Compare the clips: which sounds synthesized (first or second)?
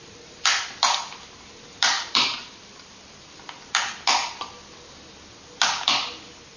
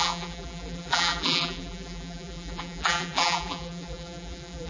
second